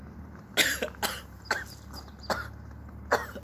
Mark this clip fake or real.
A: real